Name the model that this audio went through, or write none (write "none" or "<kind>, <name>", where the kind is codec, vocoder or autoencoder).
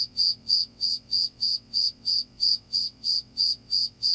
vocoder, WaveNeXt